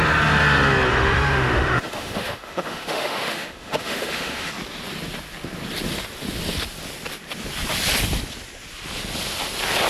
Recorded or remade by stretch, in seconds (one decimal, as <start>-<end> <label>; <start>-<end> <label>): 0.0-0.9 recorded; 0.9-4.5 remade; 4.5-9.9 recorded

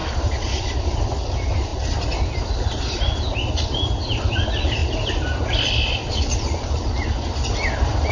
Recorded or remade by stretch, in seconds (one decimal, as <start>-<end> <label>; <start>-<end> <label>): 0.0-8.1 recorded

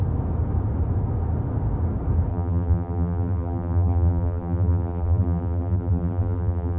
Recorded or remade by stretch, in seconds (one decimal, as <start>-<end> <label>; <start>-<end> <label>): 0.0-2.3 recorded; 2.3-6.8 remade

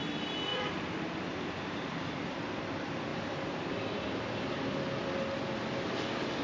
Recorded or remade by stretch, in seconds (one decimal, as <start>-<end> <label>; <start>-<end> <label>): 0.0-0.5 recorded; 0.5-1.1 remade; 1.1-6.4 recorded